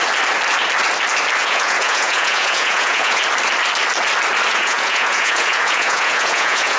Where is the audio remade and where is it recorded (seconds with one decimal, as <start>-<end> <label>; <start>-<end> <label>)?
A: 0.0-1.4 recorded; 1.4-3.2 remade; 3.2-4.5 recorded; 4.5-6.8 remade